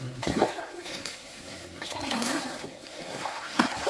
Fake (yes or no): yes